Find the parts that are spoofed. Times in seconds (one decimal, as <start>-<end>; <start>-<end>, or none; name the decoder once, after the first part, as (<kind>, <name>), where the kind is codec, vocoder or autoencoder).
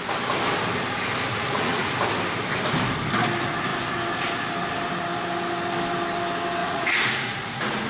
1.3-1.9 (vocoder, Vocos); 6.6-7.9